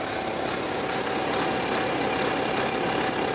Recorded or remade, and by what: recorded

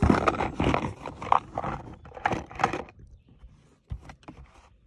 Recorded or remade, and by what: remade, vocoder, BigVGAN v2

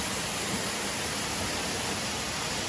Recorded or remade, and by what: recorded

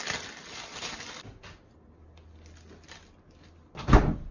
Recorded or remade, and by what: recorded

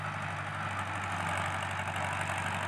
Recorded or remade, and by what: recorded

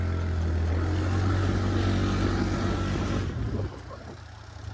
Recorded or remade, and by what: recorded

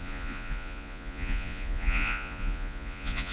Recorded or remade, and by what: remade, vocoder, Vocos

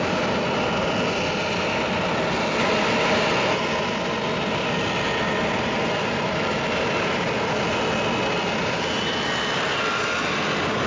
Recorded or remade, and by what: recorded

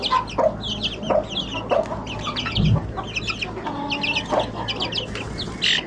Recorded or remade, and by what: recorded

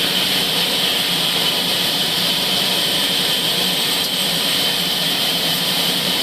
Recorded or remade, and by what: remade, vocoder, BigVGAN v2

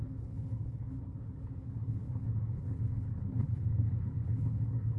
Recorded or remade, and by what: remade, codec, HILCodec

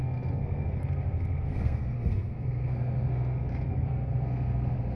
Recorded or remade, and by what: remade, codec, SNAC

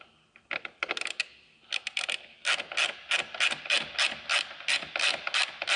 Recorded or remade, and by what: recorded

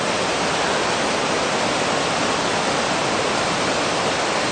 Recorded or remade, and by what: recorded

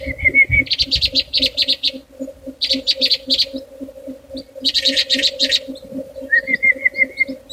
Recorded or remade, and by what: remade, vocoder, BigVGAN v2